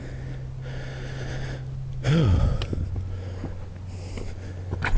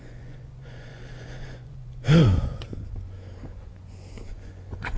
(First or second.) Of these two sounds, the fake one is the second